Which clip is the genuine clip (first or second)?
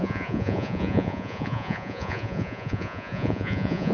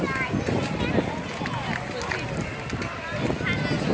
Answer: second